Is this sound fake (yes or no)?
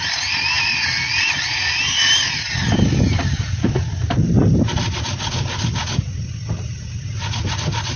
no